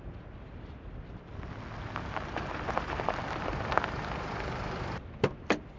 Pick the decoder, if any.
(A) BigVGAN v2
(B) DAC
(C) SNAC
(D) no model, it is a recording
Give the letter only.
D